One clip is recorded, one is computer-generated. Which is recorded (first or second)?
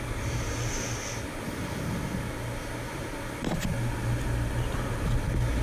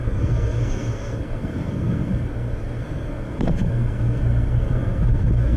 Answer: first